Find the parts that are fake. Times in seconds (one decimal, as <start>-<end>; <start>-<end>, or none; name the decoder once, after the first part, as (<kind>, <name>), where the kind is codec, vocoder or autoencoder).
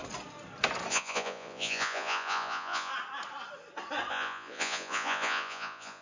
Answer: 0.9-2.9 (vocoder, Vocos); 4.1-6.0